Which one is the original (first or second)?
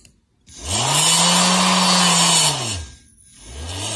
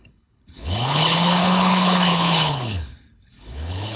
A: first